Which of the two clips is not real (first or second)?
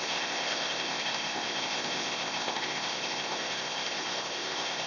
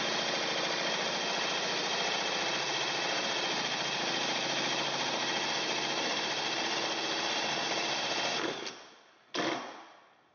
first